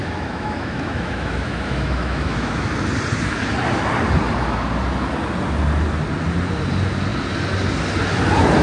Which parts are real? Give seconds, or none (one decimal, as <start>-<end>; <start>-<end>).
2.7-8.6